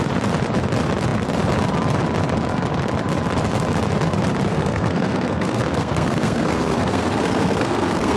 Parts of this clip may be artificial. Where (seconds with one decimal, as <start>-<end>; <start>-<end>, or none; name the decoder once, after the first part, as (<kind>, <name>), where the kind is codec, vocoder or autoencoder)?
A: 4.5-8.2 (codec, SNAC)